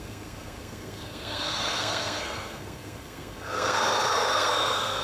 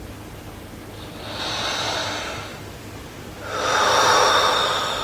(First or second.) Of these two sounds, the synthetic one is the first